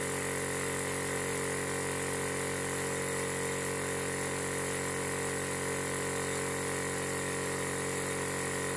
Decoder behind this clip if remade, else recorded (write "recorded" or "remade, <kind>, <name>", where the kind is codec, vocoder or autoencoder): recorded